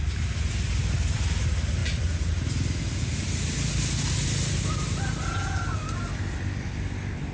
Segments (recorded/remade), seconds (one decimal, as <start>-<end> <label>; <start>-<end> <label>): 0.0-7.3 recorded